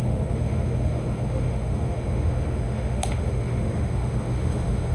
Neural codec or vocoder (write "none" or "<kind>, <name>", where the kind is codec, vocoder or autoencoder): autoencoder, DAC-VAE